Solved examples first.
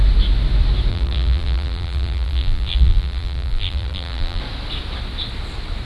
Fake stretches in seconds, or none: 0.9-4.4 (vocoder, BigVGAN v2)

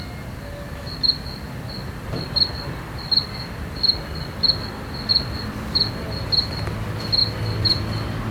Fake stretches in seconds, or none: 1.8-4.6 (vocoder, BigVGAN v2); 5.1-6.2

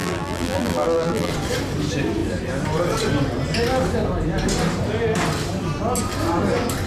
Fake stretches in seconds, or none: 0.0-1.3 (vocoder, BigVGAN v2)

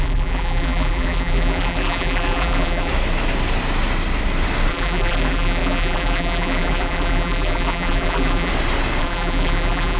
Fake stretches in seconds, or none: 0.0-2.9 (vocoder, BigVGAN v2); 4.7-8.5; 9.0-10.0

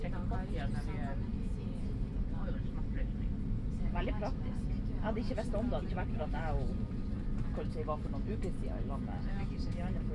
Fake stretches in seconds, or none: none